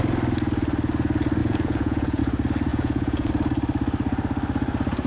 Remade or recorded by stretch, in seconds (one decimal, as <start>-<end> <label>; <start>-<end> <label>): 0.0-1.4 recorded; 1.4-2.2 remade; 2.2-2.7 recorded; 2.7-3.3 remade; 3.3-5.1 recorded